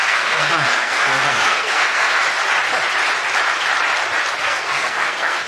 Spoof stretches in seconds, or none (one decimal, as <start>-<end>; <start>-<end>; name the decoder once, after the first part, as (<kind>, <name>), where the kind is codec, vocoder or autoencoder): 0.0-2.2 (codec, SNAC); 4.4-5.5